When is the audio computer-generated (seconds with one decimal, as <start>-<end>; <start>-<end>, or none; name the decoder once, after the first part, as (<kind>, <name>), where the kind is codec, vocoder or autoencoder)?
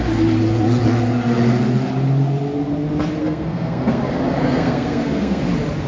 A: 3.2-4.0 (codec, SNAC); 4.4-5.4